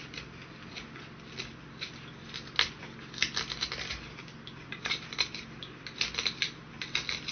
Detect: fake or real real